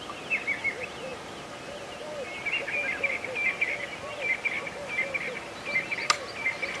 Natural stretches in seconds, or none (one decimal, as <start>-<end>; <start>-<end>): 0.0-6.8